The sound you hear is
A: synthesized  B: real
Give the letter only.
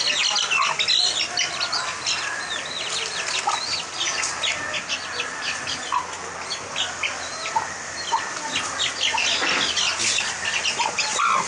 B